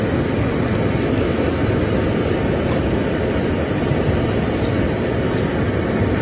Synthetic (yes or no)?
no